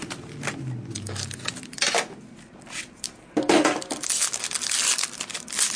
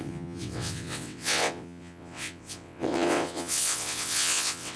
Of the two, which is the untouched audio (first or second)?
first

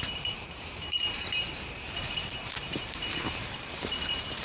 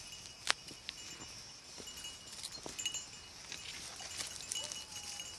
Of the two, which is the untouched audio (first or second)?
second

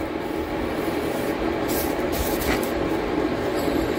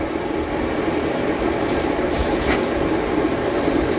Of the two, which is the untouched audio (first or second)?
first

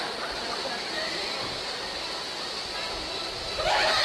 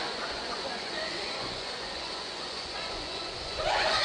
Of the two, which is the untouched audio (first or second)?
first